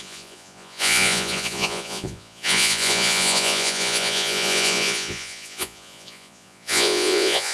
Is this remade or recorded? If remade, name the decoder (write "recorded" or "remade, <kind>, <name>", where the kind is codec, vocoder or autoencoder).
remade, vocoder, Vocos